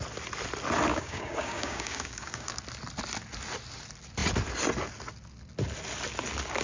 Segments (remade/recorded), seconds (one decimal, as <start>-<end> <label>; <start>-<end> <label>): 0.0-0.9 recorded; 0.9-2.6 remade; 2.6-6.6 recorded